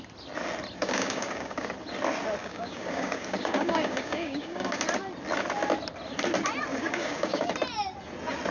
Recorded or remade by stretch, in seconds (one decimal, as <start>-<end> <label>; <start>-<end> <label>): 0.0-0.8 recorded; 0.8-1.7 remade; 1.7-2.4 recorded; 2.4-4.8 remade; 4.8-6.7 recorded; 6.7-7.5 remade; 7.5-8.5 recorded